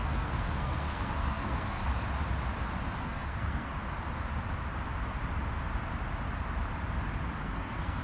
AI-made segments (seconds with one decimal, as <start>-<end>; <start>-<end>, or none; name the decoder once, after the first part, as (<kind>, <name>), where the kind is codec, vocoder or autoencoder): 0.0-1.8 (codec, SNAC); 3.0-3.7; 7.4-8.0